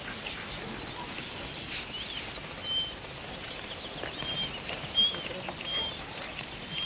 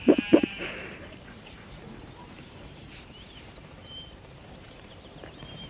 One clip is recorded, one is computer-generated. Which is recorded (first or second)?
first